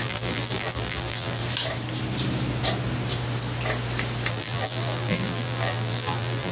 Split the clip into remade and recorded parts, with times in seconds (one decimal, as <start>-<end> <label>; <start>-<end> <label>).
0.0-1.4 remade; 1.4-4.3 recorded; 4.3-6.5 remade